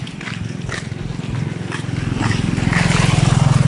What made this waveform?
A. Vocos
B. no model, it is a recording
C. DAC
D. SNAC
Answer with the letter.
B